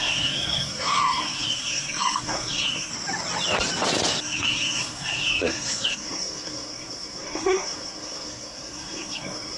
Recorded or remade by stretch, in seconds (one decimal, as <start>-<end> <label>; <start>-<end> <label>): 0.0-2.9 remade; 2.9-4.2 recorded; 4.2-9.6 remade

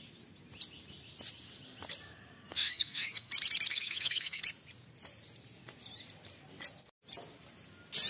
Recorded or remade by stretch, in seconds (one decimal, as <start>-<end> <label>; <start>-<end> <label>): 0.0-2.5 recorded; 2.5-3.3 remade; 3.3-3.7 recorded; 3.7-4.4 remade; 4.4-8.1 recorded

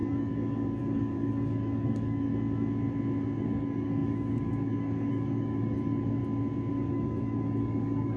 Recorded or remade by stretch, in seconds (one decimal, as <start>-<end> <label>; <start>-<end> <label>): 0.0-2.3 remade; 2.3-3.4 recorded; 3.4-6.2 remade; 6.2-6.7 recorded; 6.7-8.2 remade

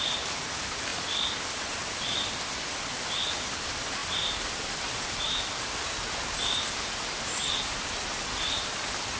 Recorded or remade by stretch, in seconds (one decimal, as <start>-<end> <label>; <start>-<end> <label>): 0.0-9.2 recorded

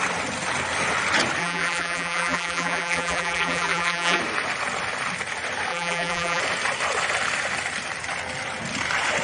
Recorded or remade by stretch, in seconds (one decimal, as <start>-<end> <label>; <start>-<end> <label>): 0.0-1.4 recorded; 1.4-4.2 remade; 4.2-5.7 recorded; 5.7-6.4 remade; 6.4-9.2 recorded

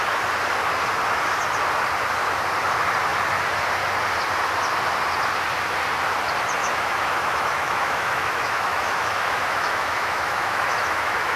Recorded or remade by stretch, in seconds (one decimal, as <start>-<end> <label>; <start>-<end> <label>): 0.0-6.6 recorded; 6.6-11.4 remade

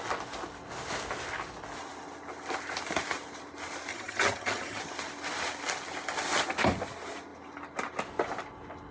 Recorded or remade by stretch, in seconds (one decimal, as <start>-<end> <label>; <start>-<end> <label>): 0.0-3.9 recorded; 3.9-4.8 remade; 4.8-8.9 recorded